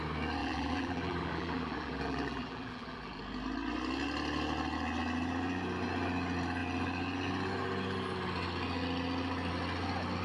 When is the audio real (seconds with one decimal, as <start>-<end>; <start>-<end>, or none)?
0.0-0.4; 3.2-10.2